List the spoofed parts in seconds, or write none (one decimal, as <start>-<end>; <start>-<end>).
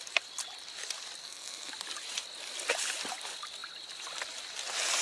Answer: 1.2-1.7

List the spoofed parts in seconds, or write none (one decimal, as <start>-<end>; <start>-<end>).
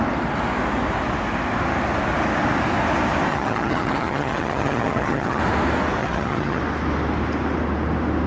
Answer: 3.3-5.4; 6.0-6.6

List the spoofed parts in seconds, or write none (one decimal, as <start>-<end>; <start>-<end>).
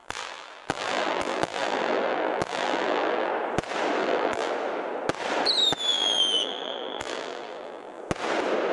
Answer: 0.0-3.3; 4.0-4.5; 5.9-8.0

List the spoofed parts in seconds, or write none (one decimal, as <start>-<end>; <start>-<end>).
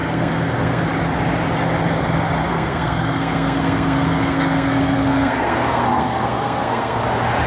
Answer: 0.0-0.8; 2.5-7.0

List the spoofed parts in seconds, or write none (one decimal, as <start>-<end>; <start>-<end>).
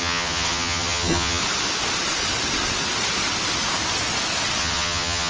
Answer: 0.0-1.4; 4.6-5.3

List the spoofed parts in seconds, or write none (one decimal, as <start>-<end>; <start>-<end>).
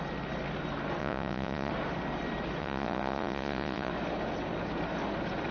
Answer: 1.0-1.7; 2.6-3.9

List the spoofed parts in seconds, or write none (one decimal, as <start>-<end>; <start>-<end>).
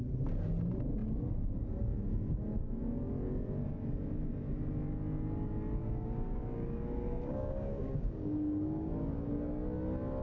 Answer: 5.8-9.3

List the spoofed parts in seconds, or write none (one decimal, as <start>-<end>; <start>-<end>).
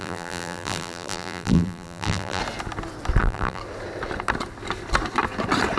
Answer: 0.0-2.4; 3.2-3.6